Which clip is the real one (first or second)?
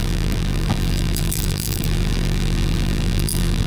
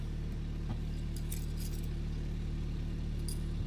second